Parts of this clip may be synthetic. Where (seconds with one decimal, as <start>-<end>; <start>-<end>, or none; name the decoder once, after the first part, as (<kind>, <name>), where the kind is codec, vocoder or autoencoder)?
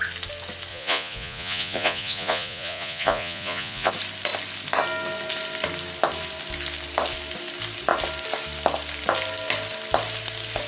0.7-3.9 (vocoder, Vocos)